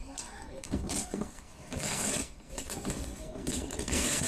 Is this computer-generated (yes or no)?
yes